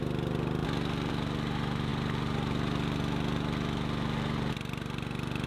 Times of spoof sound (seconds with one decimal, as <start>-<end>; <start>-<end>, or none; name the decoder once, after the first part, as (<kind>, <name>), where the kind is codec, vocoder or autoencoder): none